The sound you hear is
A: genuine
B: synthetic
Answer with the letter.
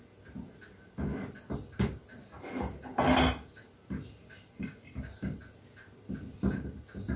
A